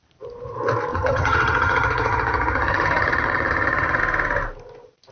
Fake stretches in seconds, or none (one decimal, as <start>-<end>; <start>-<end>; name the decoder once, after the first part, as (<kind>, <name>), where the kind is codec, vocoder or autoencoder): 0.9-4.0 (vocoder, HiFi-GAN)